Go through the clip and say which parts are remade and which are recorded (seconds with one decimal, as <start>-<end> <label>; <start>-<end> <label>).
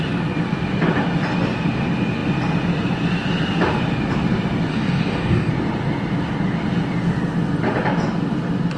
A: 0.0-4.7 recorded; 4.7-5.5 remade; 5.5-8.8 recorded